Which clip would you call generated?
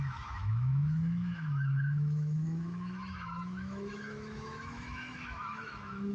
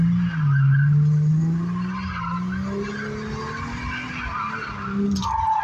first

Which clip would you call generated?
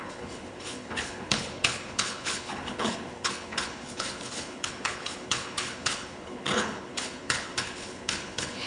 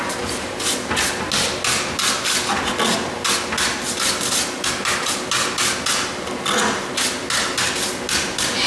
first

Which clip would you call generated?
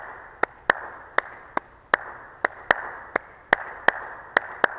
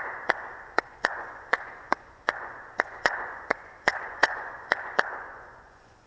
second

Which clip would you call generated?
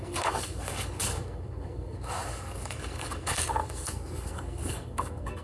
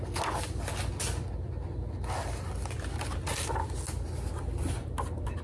first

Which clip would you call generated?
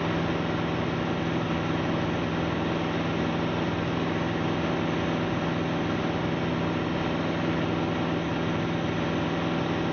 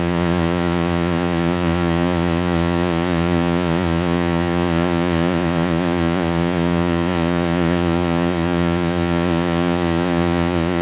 second